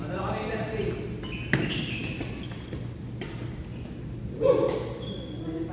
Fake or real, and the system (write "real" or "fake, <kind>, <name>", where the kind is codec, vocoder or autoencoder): real